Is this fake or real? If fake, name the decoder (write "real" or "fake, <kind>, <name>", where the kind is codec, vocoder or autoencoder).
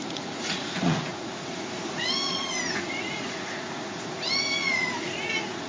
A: fake, vocoder, Vocos